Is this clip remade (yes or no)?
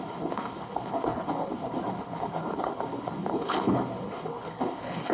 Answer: yes